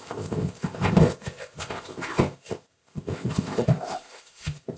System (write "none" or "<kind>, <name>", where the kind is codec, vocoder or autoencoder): codec, ZipCodec